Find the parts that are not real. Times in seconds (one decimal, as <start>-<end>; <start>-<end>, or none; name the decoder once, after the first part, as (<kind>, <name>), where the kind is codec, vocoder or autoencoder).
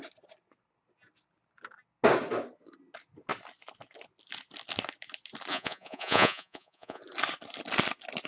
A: 5.5-7.0 (vocoder, Vocos)